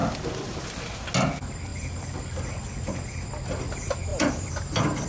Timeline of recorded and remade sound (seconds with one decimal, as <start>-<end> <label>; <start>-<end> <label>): 0.0-0.6 remade; 0.6-1.7 recorded; 1.7-2.3 remade; 2.3-4.1 recorded; 4.1-5.1 remade